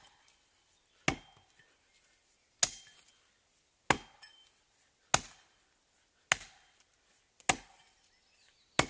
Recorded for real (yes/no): yes